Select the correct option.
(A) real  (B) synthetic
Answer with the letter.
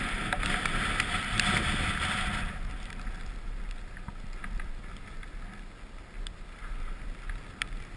A